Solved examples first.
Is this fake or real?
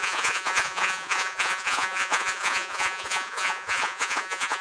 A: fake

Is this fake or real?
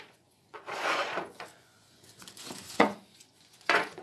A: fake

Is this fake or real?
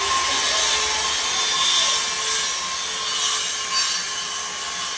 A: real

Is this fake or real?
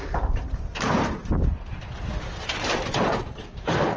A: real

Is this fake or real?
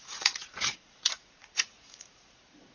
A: fake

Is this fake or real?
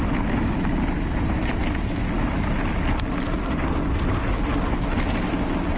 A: real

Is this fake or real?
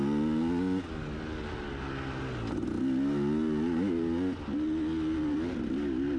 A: real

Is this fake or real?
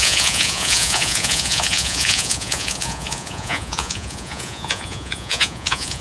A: fake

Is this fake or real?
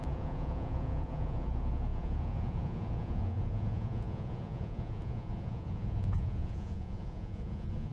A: fake